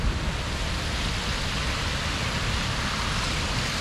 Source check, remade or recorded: recorded